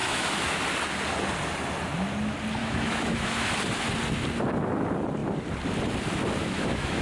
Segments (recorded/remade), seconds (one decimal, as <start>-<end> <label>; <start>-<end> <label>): 0.0-0.6 remade; 0.6-2.6 recorded; 2.6-3.5 remade; 3.5-6.4 recorded; 6.4-7.0 remade